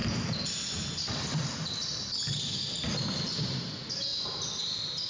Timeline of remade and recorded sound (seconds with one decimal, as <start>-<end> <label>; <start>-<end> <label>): 0.0-5.1 recorded